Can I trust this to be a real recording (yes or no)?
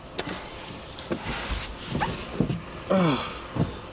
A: yes